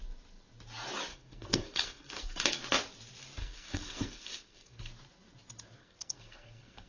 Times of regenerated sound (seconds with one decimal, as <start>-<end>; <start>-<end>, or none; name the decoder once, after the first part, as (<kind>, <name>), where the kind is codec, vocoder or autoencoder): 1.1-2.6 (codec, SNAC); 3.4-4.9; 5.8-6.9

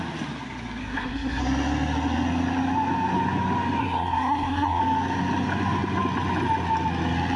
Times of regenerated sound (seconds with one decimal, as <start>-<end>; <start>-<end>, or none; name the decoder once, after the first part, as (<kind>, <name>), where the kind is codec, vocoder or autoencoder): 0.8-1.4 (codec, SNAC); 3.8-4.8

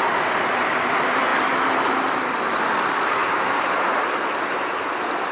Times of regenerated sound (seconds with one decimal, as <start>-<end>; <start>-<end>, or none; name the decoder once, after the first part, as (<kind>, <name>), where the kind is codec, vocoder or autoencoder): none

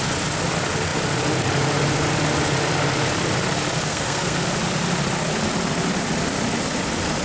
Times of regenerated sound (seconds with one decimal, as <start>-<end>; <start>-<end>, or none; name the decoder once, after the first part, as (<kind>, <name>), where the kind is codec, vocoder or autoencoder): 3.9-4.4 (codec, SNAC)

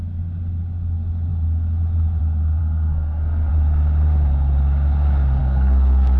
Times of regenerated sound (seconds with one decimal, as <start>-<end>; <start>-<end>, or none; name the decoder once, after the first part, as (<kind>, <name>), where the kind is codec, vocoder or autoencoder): 2.6-3.5 (codec, SNAC); 5.4-6.2